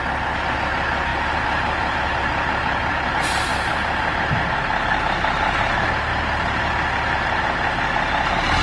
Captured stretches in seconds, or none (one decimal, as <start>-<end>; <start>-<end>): 0.0-1.1; 2.9-3.5; 4.1-6.1; 6.6-8.6